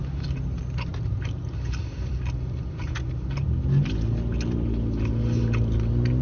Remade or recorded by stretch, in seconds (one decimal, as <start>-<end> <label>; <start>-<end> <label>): 0.0-6.2 recorded